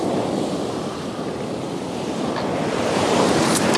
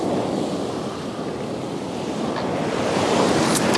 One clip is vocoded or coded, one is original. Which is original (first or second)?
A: second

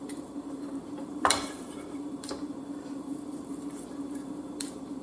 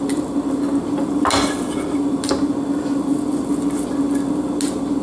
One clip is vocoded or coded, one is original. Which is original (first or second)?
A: second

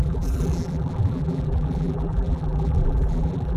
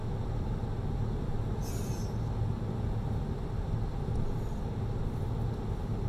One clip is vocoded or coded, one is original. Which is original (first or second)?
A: second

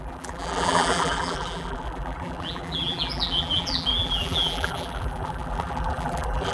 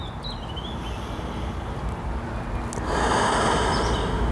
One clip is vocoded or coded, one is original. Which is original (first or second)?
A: second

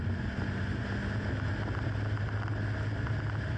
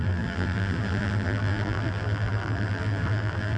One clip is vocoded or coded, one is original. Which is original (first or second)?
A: first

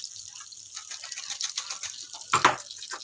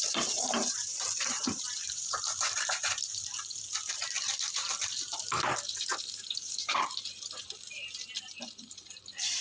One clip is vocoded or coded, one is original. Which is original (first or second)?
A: first